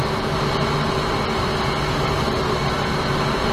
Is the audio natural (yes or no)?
yes